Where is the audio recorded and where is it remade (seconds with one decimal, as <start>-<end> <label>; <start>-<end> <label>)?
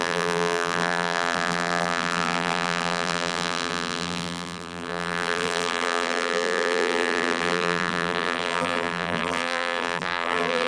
0.0-10.7 remade